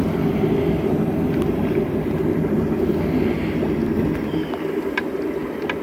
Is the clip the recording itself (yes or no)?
yes